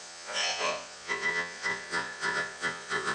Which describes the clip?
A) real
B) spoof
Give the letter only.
B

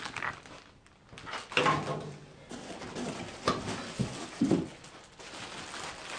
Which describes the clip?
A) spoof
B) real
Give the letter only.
B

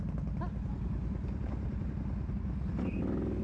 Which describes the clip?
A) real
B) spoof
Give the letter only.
A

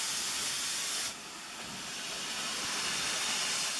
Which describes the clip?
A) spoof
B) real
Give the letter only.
B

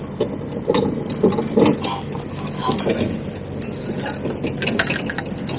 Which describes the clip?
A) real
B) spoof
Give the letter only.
A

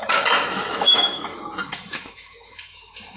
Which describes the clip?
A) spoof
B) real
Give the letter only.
A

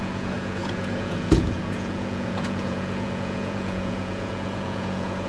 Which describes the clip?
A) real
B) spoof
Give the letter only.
B